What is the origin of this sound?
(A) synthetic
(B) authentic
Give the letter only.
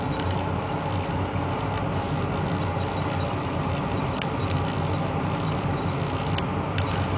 B